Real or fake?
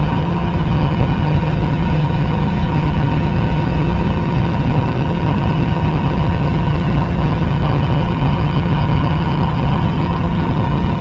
fake